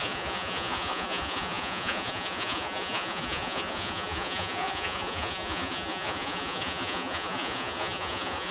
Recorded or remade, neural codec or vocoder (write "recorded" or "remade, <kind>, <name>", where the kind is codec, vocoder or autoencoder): remade, vocoder, Vocos